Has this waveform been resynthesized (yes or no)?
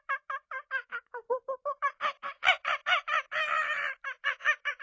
yes